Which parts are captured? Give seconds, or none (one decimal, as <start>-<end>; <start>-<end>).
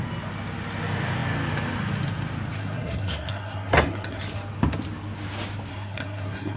0.0-2.6; 4.2-5.7